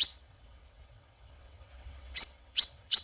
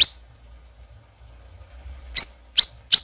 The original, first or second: second